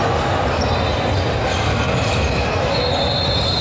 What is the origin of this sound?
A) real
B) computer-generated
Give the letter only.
A